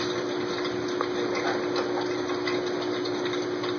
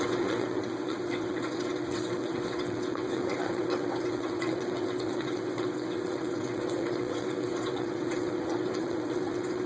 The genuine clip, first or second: first